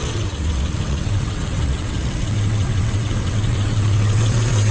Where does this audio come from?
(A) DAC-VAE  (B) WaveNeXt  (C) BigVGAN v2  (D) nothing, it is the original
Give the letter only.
B